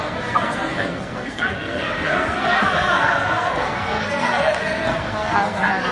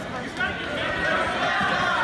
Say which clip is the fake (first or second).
first